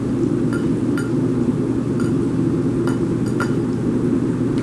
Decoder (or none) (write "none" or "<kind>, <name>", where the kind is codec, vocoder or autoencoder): none